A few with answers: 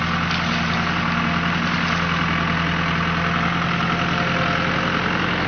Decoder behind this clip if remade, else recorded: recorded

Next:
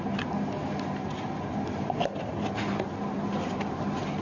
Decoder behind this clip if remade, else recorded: recorded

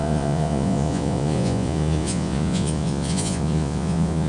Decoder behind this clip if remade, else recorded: remade, vocoder, Vocos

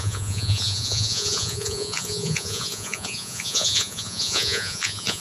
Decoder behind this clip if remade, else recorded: remade, vocoder, Vocos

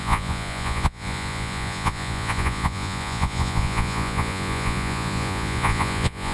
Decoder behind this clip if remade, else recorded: remade, vocoder, Vocos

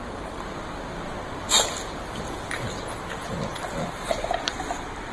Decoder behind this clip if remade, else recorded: recorded